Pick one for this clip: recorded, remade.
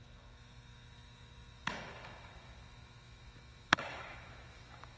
remade